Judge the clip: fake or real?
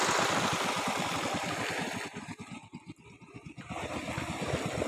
real